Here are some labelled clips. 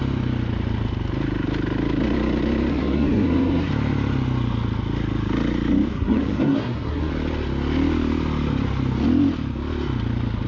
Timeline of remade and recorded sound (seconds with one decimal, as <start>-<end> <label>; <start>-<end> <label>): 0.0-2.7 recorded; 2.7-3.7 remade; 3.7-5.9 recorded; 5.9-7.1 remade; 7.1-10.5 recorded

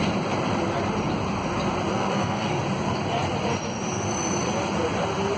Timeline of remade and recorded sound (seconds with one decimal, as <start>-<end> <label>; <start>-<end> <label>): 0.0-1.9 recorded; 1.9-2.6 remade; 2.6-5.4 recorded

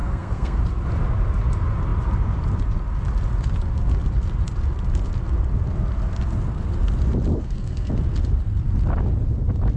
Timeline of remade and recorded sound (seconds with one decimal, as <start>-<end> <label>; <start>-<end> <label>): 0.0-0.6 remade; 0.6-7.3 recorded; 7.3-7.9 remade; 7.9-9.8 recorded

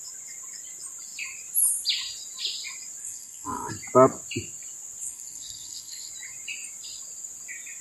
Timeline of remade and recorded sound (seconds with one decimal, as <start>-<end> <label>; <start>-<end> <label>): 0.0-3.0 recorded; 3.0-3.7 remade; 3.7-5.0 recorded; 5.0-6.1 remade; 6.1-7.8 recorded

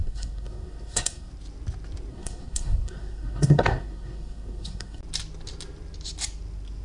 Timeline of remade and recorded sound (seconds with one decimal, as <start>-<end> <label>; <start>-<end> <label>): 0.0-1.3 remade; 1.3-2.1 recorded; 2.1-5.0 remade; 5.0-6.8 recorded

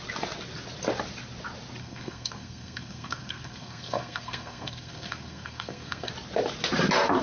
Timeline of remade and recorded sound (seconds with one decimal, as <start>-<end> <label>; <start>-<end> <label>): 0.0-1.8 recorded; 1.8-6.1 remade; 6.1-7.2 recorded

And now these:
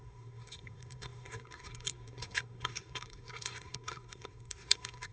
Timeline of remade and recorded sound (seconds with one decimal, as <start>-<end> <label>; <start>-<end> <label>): 0.0-5.1 remade